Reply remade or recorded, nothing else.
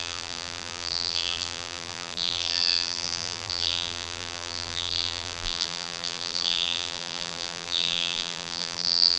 remade